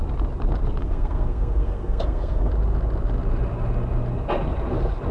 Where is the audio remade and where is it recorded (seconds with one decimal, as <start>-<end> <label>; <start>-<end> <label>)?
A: 0.0-0.8 recorded; 0.8-2.5 remade; 2.5-5.1 recorded